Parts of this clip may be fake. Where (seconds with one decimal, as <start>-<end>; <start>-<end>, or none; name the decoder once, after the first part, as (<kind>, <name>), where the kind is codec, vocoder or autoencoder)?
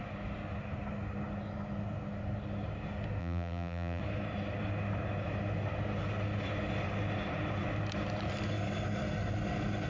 3.2-4.0 (vocoder, BigVGAN v2)